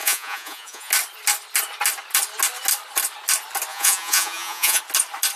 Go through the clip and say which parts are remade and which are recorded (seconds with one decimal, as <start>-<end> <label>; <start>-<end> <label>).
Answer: 0.0-0.9 remade; 0.9-3.7 recorded; 3.7-4.8 remade; 4.8-5.4 recorded